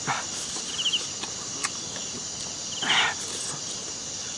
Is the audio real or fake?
real